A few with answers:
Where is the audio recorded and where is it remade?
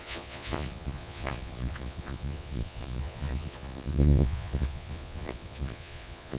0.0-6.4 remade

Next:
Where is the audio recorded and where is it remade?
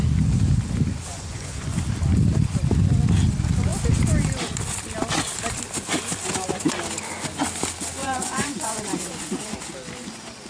0.0-1.1 recorded; 1.1-1.8 remade; 1.8-8.0 recorded; 8.0-9.6 remade; 9.6-10.5 recorded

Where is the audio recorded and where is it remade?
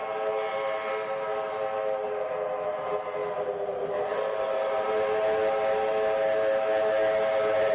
0.0-7.7 recorded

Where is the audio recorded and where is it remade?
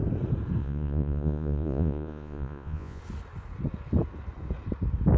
0.0-0.6 recorded; 0.6-3.0 remade; 3.0-5.2 recorded